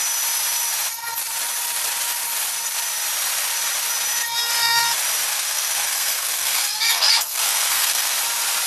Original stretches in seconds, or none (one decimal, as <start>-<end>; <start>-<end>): 0.0-5.3; 8.2-8.7